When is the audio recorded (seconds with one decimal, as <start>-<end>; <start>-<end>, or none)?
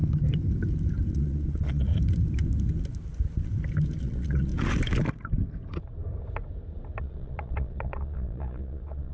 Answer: 0.0-1.1; 1.9-4.0; 4.5-7.0